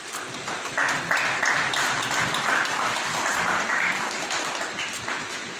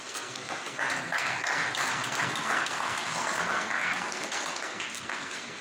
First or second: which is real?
first